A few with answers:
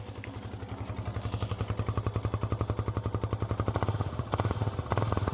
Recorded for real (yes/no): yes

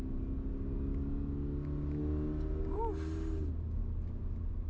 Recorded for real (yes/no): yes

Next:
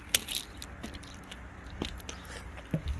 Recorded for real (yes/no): yes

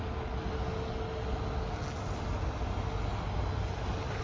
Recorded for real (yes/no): yes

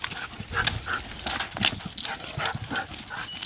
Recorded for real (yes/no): yes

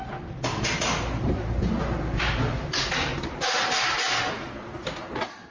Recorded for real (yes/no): yes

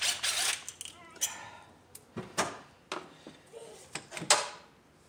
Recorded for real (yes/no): yes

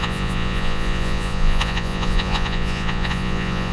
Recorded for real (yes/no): no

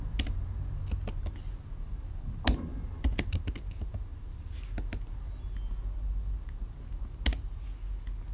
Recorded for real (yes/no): yes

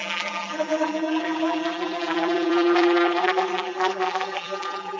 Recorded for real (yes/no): no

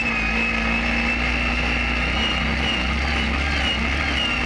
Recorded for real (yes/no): yes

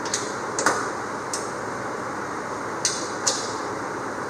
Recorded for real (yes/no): yes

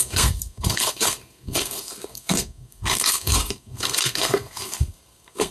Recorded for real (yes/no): no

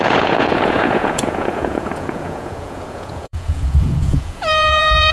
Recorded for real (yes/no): no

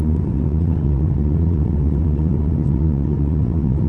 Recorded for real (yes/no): no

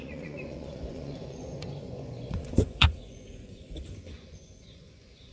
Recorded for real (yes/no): no